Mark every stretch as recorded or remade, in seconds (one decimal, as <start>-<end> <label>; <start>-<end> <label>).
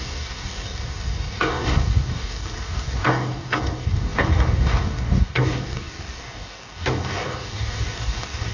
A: 0.0-8.5 remade